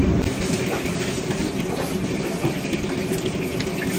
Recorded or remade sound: recorded